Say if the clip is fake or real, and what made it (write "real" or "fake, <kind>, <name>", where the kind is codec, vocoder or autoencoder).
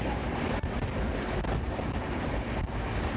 real